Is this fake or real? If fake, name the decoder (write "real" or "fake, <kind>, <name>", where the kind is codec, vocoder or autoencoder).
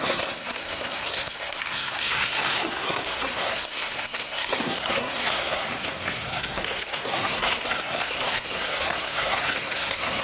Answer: fake, codec, SNAC